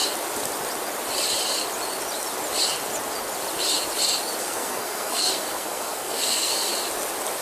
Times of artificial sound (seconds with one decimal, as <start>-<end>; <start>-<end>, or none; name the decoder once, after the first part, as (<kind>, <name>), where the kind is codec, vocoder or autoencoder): 4.4-6.7 (codec, SNAC)